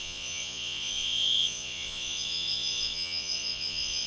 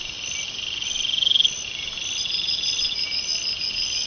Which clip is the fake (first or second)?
first